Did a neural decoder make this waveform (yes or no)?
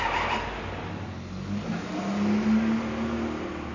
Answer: no